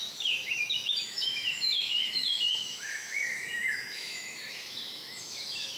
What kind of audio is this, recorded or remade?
remade